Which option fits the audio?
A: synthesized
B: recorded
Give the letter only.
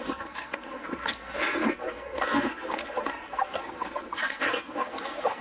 A